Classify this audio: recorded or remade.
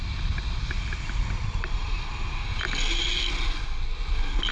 recorded